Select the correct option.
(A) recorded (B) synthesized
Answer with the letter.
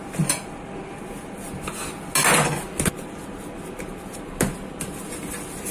A